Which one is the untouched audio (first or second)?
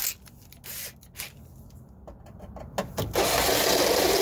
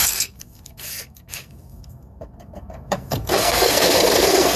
first